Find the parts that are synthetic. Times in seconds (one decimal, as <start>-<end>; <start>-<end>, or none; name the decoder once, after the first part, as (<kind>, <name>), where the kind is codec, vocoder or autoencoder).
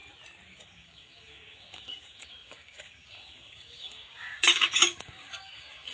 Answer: 0.6-5.9 (codec, DAC)